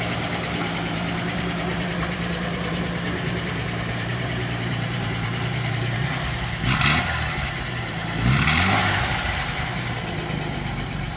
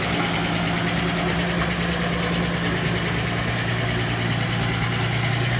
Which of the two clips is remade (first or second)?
first